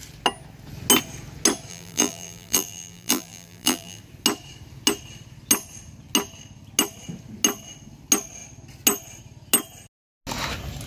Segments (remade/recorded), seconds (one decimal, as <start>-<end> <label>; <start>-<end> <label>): 0.0-1.7 recorded; 1.7-4.0 remade; 4.0-10.9 recorded